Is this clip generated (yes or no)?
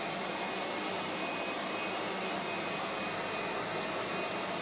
no